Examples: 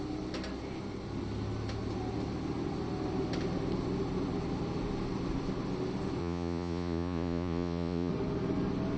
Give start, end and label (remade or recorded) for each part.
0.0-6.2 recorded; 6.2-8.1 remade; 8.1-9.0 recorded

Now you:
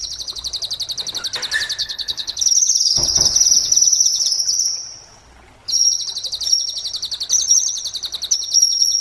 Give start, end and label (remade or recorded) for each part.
0.0-1.8 recorded; 1.8-2.4 remade; 2.4-9.0 recorded

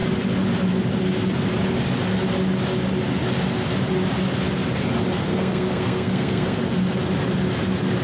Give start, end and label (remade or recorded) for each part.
0.0-5.3 recorded; 5.3-6.6 remade; 6.6-8.0 recorded

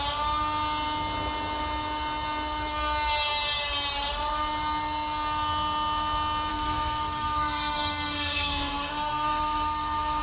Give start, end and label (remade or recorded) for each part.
0.0-6.5 recorded; 6.5-10.2 remade